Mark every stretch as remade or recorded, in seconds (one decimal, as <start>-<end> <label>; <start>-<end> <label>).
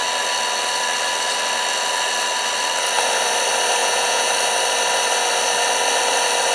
0.0-3.8 recorded; 3.8-4.3 remade; 4.3-6.5 recorded